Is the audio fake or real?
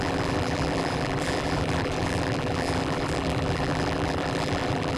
fake